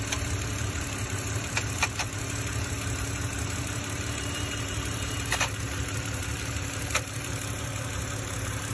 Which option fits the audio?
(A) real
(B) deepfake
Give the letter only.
B